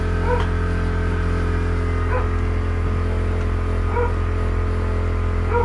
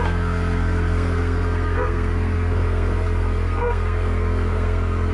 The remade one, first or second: second